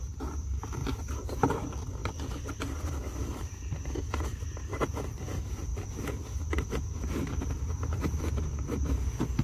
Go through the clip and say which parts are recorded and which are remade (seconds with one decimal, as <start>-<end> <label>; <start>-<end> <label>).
0.0-0.8 remade; 0.8-1.5 recorded; 1.5-5.7 remade; 5.7-7.1 recorded; 7.1-9.4 remade